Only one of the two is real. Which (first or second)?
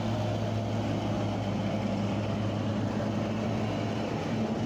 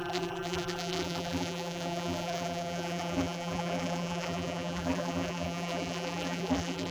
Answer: first